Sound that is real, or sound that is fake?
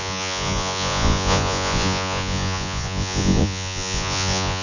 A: fake